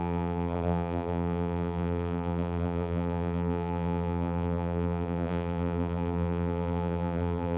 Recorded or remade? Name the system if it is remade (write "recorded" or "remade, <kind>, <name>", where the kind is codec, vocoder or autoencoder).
remade, vocoder, BigVGAN v2